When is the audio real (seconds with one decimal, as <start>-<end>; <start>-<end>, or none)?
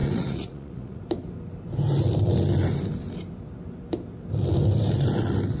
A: 1.0-5.6